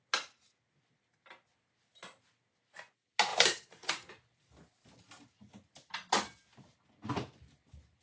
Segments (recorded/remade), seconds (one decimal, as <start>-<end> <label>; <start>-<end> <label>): 0.0-3.3 recorded; 3.3-4.1 remade; 4.1-8.0 recorded